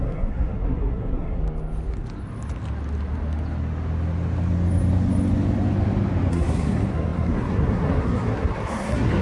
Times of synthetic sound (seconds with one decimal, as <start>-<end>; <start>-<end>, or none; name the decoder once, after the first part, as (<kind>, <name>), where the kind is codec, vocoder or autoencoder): 0.0-1.4 (codec, SNAC); 6.3-9.2